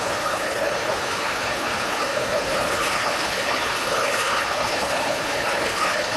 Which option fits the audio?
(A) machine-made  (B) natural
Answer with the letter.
A